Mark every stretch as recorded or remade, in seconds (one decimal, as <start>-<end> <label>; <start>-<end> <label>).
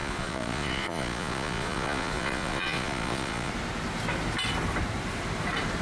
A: 0.0-3.5 remade; 3.5-5.8 recorded